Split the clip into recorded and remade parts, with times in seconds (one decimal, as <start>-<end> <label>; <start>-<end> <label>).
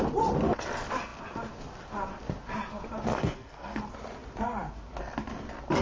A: 0.0-3.1 recorded; 3.1-3.8 remade; 3.8-5.8 recorded